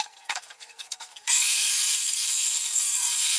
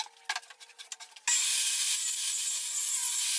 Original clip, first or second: second